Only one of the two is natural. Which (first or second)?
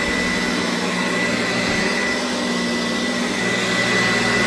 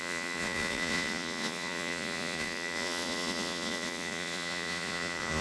first